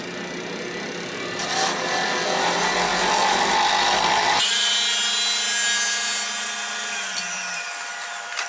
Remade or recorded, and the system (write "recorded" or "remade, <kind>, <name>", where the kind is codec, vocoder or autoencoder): recorded